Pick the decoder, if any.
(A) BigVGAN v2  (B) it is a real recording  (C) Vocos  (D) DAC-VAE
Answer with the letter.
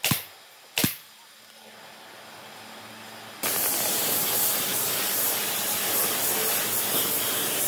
B